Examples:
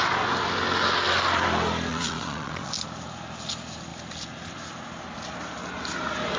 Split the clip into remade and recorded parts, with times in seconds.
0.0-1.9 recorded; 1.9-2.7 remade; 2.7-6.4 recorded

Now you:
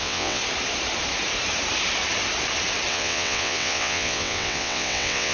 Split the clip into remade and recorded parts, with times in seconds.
0.0-0.4 remade; 0.4-2.9 recorded; 2.9-5.3 remade

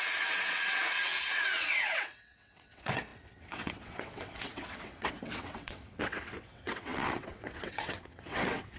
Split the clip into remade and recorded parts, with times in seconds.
0.0-8.8 remade

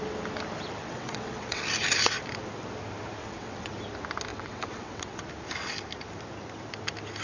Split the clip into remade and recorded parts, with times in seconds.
0.0-0.8 recorded; 0.8-1.6 remade; 1.6-3.2 recorded; 3.2-3.7 remade; 3.7-4.3 recorded; 4.3-5.2 remade; 5.2-7.2 recorded

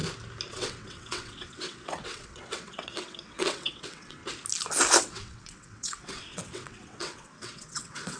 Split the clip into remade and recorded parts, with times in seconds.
0.0-0.5 recorded; 0.5-4.2 remade; 4.2-5.0 recorded; 5.0-8.2 remade

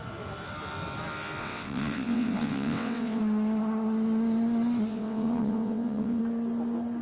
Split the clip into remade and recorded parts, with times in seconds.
0.0-1.4 recorded; 1.4-3.2 remade; 3.2-4.9 recorded; 4.9-6.2 remade; 6.2-7.0 recorded

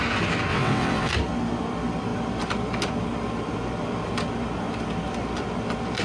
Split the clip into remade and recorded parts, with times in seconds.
0.0-0.5 recorded; 0.5-1.1 remade; 1.1-6.0 recorded

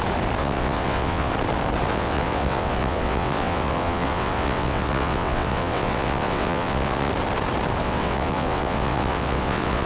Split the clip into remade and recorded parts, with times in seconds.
0.0-0.4 recorded; 0.4-1.3 remade; 1.3-1.9 recorded; 1.9-7.1 remade; 7.1-7.8 recorded; 7.8-9.9 remade